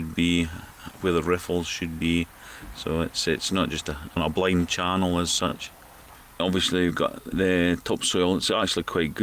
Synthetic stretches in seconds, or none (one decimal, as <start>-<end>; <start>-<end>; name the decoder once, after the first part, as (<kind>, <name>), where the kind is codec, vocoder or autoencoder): none